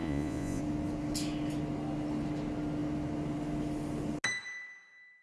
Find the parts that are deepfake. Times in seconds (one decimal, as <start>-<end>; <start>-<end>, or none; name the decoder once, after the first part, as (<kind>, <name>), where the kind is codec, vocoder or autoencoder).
0.0-0.6 (vocoder, Vocos)